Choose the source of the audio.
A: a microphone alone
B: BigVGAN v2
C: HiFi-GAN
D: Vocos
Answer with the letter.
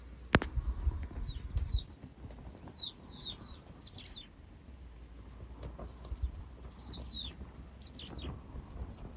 A